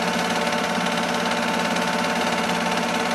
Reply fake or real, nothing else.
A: real